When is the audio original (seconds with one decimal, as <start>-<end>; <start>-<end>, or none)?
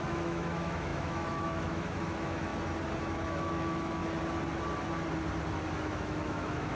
2.5-3.0; 4.0-5.8